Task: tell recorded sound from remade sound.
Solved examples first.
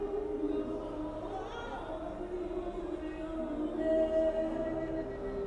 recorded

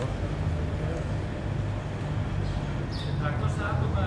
recorded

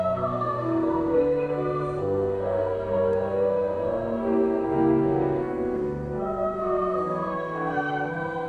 remade